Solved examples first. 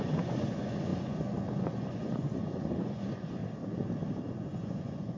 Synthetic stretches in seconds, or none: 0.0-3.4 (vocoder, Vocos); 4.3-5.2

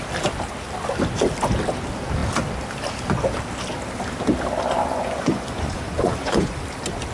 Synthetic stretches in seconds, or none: 4.8-6.6 (vocoder, Vocos)

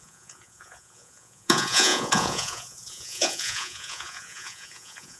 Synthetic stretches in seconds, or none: 0.0-5.2 (vocoder, Vocos)

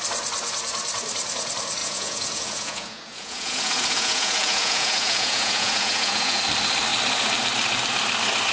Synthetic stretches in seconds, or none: 1.8-6.4 (vocoder, Vocos)